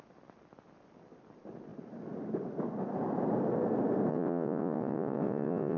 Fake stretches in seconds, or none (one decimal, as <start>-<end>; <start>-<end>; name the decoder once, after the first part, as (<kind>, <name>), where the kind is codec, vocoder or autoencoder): 4.1-5.8 (vocoder, Vocos)